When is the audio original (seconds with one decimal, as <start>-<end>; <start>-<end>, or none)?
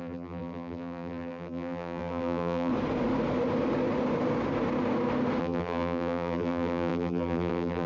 2.7-5.4